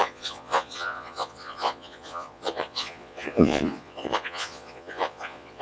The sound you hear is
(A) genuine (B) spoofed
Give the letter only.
B